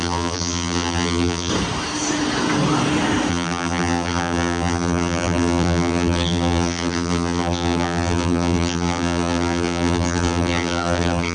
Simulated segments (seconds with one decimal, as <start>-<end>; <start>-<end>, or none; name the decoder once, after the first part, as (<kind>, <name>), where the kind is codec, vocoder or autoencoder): 0.0-1.5 (vocoder, BigVGAN v2); 3.3-11.3